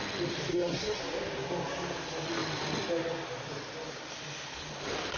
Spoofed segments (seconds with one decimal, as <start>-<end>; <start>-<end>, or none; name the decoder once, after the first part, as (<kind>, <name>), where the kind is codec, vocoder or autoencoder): 0.5-1.0 (codec, SNAC)